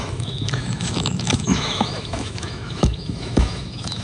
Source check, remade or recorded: remade